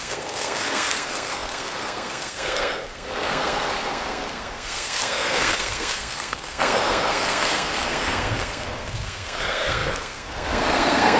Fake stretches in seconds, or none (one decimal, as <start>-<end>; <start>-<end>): 0.0-11.2